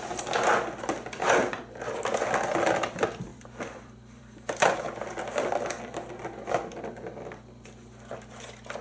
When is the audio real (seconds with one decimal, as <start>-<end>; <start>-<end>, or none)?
0.0-3.3; 4.8-8.8

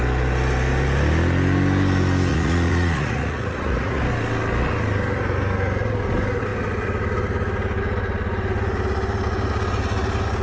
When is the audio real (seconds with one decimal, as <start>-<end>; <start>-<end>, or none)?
0.0-2.3; 4.0-10.4

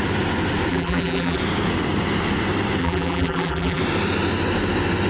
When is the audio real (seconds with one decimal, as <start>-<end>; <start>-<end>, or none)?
0.0-0.7; 1.4-2.8; 3.8-5.1

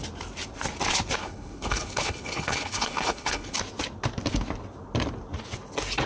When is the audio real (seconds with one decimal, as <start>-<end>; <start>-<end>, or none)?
0.0-1.2; 3.6-6.1

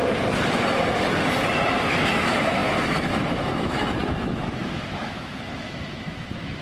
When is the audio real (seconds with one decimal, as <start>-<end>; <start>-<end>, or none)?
0.0-1.9